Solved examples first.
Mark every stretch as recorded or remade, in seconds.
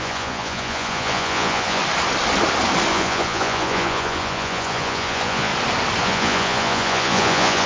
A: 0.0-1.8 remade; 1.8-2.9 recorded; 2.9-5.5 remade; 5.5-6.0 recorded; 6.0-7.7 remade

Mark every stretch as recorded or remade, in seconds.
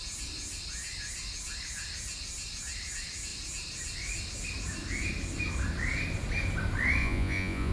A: 0.0-7.0 recorded; 7.0-7.7 remade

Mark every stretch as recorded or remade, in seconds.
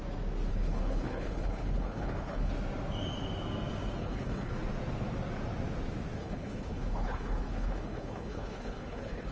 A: 0.0-0.5 recorded; 0.5-2.5 remade; 2.5-4.0 recorded; 4.0-4.5 remade; 4.5-6.2 recorded; 6.2-9.3 remade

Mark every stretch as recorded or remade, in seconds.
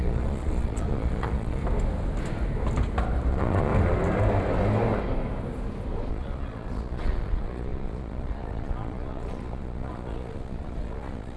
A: 0.0-1.6 remade; 1.6-3.3 recorded; 3.3-3.7 remade; 3.7-6.1 recorded; 6.1-11.4 remade